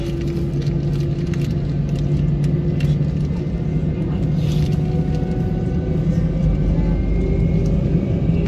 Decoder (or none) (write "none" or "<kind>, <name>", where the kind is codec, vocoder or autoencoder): none